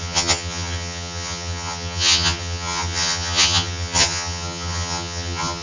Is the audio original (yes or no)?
no